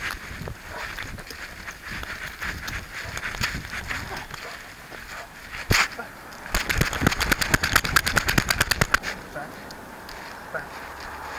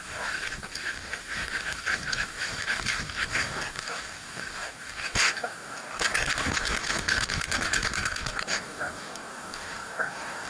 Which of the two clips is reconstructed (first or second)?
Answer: second